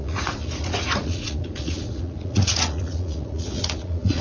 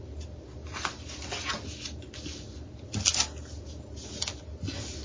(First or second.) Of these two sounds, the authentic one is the second